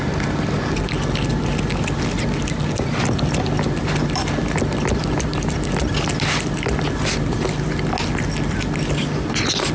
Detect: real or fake real